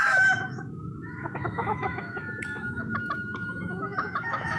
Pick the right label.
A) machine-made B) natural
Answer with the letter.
A